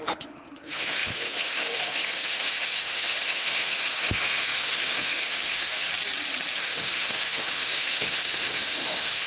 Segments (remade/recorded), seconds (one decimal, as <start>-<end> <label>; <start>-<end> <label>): 0.0-5.9 remade; 5.9-6.6 recorded; 6.6-9.3 remade